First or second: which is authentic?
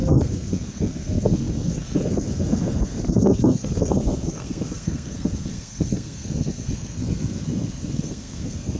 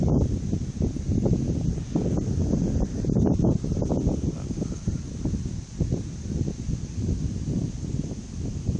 second